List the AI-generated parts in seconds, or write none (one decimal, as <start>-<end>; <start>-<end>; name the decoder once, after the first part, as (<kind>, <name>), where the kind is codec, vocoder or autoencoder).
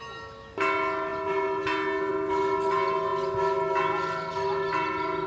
none